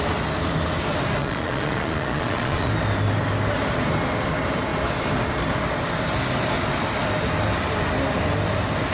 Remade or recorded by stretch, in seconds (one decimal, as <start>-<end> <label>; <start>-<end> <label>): 0.0-1.2 recorded; 1.2-2.7 remade; 2.7-8.9 recorded